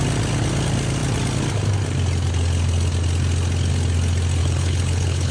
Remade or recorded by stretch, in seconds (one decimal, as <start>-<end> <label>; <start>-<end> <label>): 0.0-4.4 recorded; 4.4-5.3 remade

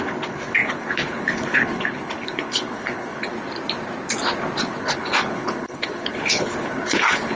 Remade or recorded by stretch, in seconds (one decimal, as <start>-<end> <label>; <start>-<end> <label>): 0.0-3.3 remade; 3.3-4.6 recorded; 4.6-7.4 remade